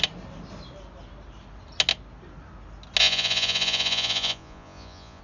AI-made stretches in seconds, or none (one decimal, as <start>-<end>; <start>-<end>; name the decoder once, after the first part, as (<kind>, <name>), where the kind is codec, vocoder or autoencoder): 3.0-5.2 (vocoder, Vocos)